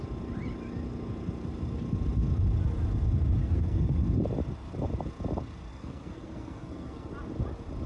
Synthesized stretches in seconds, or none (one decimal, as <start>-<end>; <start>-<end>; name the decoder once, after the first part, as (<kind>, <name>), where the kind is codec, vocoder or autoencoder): 3.4-4.0 (codec, SNAC); 5.7-7.1